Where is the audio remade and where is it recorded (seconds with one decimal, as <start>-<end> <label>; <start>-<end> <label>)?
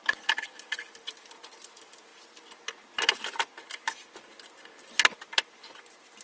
0.0-6.2 recorded